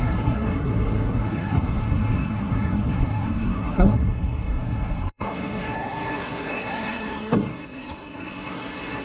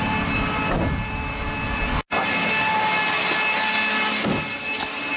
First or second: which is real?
second